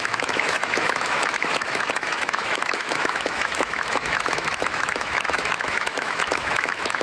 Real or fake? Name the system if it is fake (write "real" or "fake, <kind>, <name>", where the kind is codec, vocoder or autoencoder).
fake, autoencoder, DAC-VAE